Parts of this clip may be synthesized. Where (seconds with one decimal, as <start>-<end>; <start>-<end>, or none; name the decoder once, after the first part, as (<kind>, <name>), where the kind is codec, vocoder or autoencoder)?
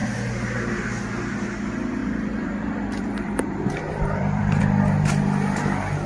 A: 2.0-4.6 (vocoder, BigVGAN v2)